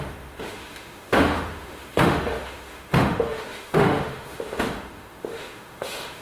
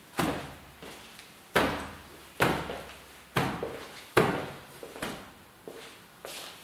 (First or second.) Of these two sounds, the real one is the second